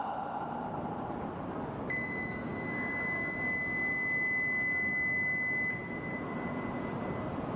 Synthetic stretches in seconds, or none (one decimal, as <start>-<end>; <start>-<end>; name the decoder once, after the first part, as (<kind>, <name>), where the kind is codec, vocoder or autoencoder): none